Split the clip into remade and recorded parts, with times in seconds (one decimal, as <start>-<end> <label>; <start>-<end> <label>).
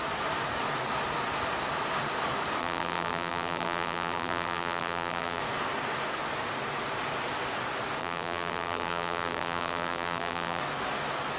0.0-2.6 recorded; 2.6-5.4 remade; 5.4-8.0 recorded; 8.0-10.6 remade; 10.6-11.4 recorded